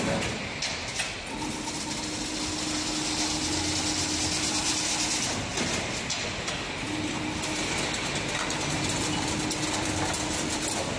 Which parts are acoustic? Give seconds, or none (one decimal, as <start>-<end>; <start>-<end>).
0.0-11.0